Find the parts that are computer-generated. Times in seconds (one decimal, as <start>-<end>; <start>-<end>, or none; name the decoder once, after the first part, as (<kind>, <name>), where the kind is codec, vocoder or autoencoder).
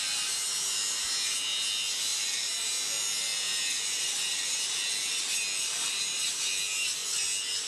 2.1-2.7 (vocoder, BigVGAN v2)